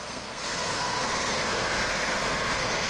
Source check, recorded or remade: remade